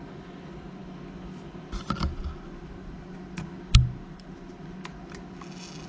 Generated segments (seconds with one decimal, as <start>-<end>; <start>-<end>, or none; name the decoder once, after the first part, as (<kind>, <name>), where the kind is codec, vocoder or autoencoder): none